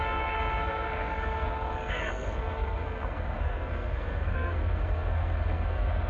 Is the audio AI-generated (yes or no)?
yes